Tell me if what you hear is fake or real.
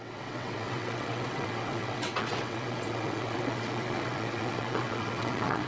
fake